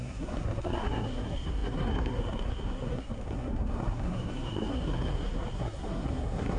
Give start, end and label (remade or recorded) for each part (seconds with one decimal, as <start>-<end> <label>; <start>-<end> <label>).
0.0-6.6 remade